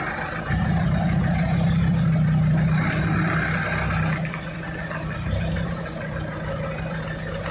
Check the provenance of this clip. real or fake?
real